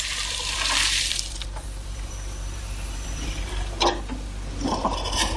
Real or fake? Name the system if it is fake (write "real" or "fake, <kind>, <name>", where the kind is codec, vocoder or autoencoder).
fake, vocoder, BigVGAN v2